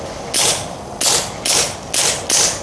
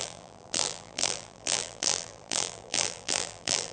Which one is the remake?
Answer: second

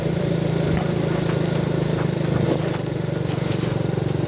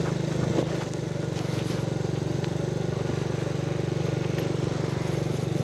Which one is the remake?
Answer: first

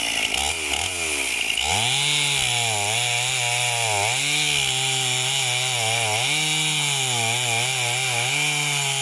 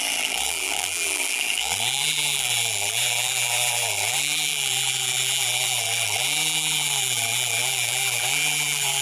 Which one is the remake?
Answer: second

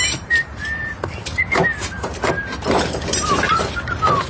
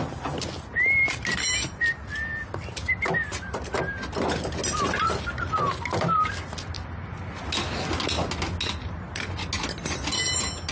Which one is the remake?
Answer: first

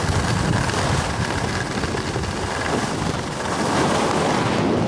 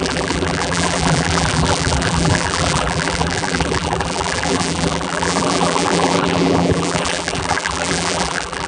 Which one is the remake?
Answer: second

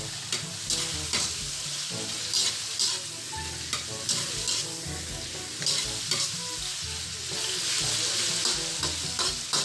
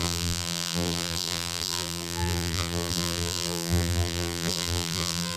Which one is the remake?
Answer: second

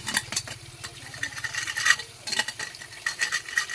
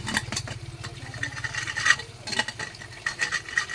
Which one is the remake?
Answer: first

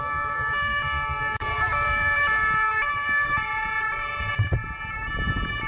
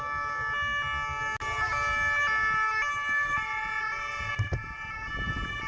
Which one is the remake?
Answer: first